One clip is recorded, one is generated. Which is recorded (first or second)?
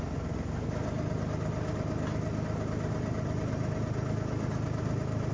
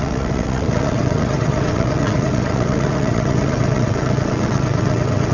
first